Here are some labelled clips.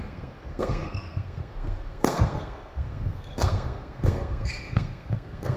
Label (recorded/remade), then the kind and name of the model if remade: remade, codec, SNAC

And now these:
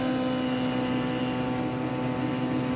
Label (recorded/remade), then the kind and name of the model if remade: recorded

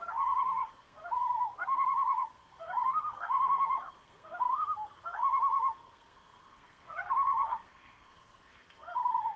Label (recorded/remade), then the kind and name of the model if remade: remade, codec, SNAC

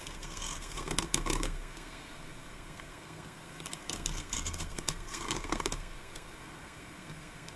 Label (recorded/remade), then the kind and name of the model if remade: remade, codec, SNAC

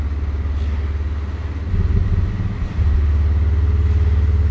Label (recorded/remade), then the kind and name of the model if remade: recorded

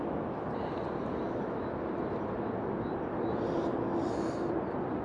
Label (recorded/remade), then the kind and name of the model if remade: recorded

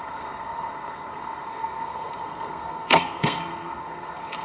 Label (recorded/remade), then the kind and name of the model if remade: remade, codec, SNAC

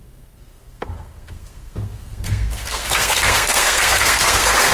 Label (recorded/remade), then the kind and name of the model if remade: remade, codec, SNAC